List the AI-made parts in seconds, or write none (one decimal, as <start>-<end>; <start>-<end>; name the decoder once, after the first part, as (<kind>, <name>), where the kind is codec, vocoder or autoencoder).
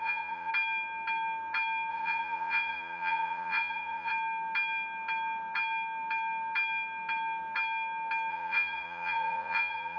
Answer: 0.0-0.5 (vocoder, Vocos); 1.9-4.1; 8.3-10.0